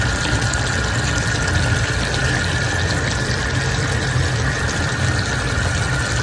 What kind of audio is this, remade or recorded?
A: recorded